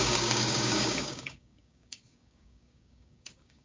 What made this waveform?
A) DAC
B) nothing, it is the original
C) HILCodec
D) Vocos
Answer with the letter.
A